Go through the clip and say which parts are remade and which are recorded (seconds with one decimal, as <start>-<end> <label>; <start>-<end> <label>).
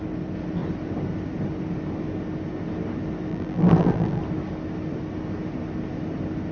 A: 0.0-3.3 recorded; 3.3-4.2 remade; 4.2-6.5 recorded